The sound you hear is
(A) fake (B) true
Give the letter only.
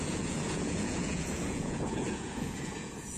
A